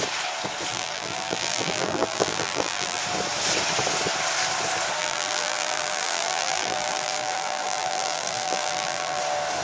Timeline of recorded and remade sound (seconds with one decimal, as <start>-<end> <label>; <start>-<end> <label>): 0.0-0.7 recorded; 0.7-3.0 remade; 3.0-5.0 recorded; 5.0-9.2 remade; 9.2-9.6 recorded